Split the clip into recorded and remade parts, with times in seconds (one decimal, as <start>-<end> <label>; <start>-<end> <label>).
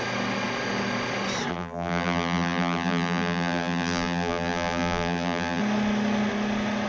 0.0-1.5 recorded; 1.5-5.6 remade; 5.6-6.9 recorded